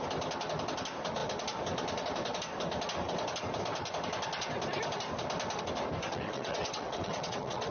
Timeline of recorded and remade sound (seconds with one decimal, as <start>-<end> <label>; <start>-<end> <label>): 0.0-6.1 recorded; 6.1-7.7 remade